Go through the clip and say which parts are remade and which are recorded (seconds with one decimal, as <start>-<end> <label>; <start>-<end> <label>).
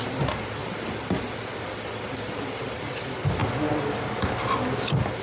0.0-5.2 recorded